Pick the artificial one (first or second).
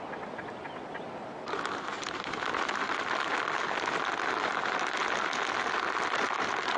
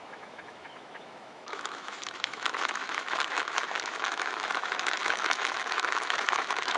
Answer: second